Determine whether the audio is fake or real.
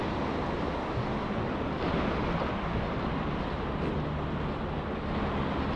real